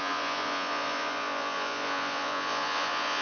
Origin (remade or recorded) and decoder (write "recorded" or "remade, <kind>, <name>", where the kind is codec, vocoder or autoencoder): remade, vocoder, Vocos